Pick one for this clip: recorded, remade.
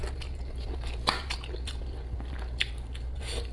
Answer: recorded